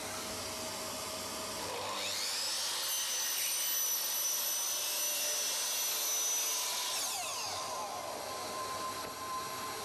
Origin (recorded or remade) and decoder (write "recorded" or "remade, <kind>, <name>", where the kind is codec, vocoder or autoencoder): recorded